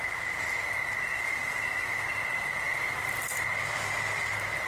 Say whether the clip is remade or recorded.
recorded